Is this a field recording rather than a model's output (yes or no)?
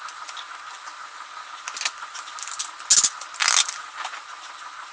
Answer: yes